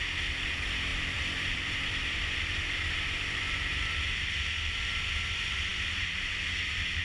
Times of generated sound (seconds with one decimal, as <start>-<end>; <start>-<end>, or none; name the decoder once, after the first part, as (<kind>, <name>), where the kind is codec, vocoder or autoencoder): 0.9-3.9 (vocoder, BigVGAN v2)